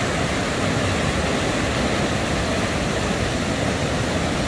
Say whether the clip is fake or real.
real